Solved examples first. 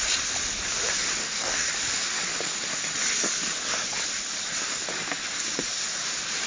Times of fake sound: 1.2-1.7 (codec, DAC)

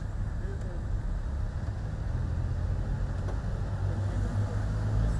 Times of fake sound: none

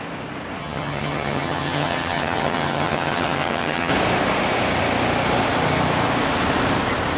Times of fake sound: 0.6-3.9 (vocoder, HiFi-GAN)

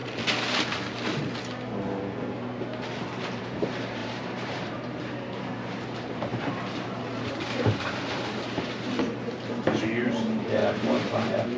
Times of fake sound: 3.4-11.6 (vocoder, BigVGAN v2)

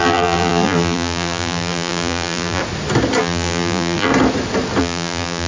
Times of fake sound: 0.0-2.6 (vocoder, BigVGAN v2); 3.2-4.1; 4.8-5.5

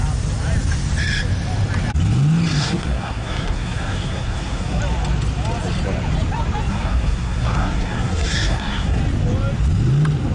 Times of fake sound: 2.6-4.8 (codec, SNAC); 6.7-9.0

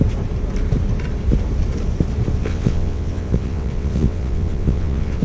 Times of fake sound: 2.4-5.2 (vocoder, WaveNeXt)